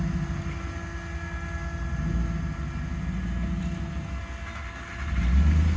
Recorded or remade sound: recorded